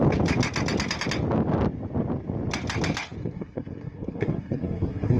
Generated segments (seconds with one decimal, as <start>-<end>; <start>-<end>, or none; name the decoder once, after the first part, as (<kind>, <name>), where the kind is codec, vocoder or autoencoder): 3.2-5.2 (codec, SNAC)